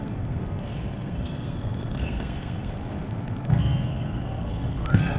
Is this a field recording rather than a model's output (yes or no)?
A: no